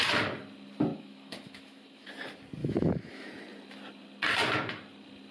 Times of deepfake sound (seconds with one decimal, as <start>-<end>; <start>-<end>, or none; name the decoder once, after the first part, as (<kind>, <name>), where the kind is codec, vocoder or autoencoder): 0.9-2.1 (autoencoder, DAC-VAE); 2.6-3.3